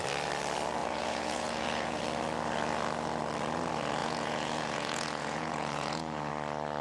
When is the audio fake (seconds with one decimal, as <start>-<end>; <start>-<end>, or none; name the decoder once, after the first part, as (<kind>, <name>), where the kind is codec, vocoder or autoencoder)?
0.8-2.0 (vocoder, Vocos); 4.0-6.3